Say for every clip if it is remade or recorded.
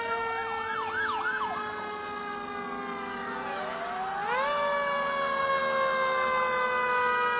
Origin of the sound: recorded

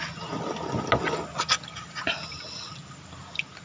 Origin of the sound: recorded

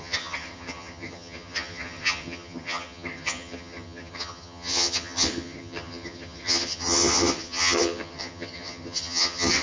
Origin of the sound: remade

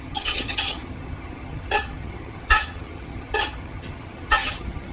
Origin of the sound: remade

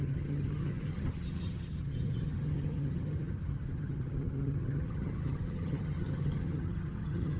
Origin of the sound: remade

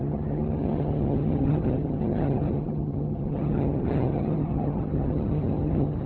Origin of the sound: remade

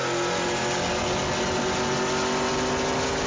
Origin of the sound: recorded